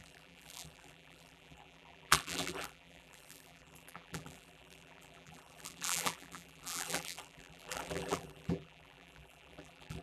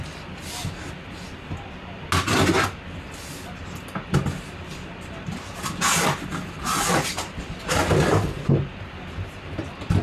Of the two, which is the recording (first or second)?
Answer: second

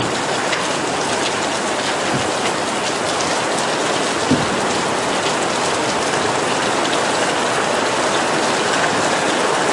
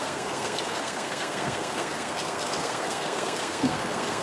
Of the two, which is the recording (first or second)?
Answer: first